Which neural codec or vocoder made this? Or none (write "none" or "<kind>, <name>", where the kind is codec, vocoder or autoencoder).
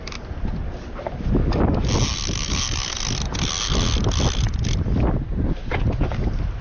none